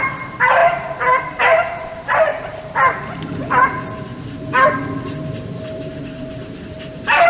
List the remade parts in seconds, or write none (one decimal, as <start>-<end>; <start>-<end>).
0.0-4.1; 5.5-7.3